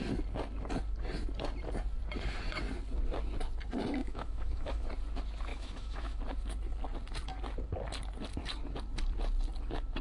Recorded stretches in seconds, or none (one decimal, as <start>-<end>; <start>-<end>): 0.0-4.0; 4.9-5.5; 6.2-10.0

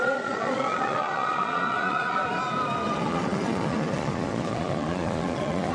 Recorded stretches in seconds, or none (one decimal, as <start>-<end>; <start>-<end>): 2.2-2.9

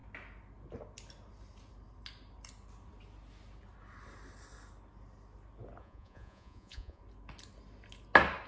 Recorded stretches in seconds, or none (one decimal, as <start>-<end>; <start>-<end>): 0.0-5.8; 7.0-8.5